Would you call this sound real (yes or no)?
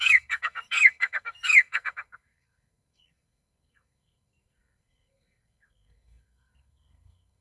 no